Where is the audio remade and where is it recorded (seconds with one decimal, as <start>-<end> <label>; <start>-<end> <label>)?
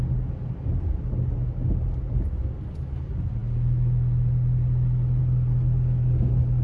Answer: 0.0-6.6 recorded